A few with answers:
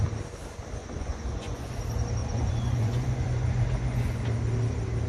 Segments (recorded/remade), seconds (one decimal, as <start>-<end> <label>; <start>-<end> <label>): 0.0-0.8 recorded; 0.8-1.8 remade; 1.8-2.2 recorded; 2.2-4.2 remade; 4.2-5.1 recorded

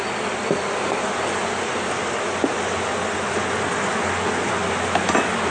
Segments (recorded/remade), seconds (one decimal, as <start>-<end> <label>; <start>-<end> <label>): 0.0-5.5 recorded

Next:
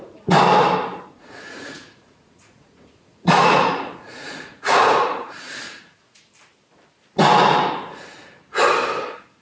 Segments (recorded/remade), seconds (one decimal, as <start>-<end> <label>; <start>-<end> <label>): 0.0-1.2 recorded; 1.2-6.3 remade; 6.3-9.4 recorded

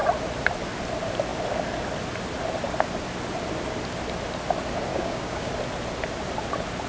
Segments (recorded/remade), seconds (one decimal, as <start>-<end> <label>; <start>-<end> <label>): 0.0-4.9 recorded; 4.9-5.5 remade; 5.5-6.9 recorded

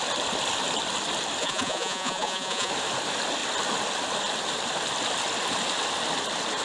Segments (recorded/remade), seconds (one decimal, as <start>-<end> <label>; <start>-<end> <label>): 0.0-1.4 recorded; 1.4-2.7 remade; 2.7-6.6 recorded

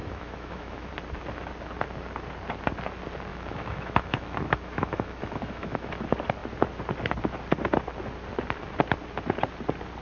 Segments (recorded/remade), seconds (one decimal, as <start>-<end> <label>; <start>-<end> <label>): 0.0-0.9 remade; 0.9-3.3 recorded; 3.3-5.9 remade; 5.9-10.0 recorded

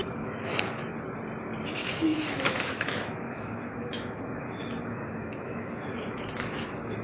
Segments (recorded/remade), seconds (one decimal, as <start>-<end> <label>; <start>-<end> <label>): 0.0-0.9 remade; 0.9-1.7 recorded; 1.7-7.0 remade